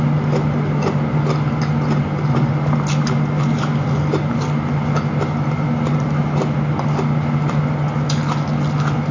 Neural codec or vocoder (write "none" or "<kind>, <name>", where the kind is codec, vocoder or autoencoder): none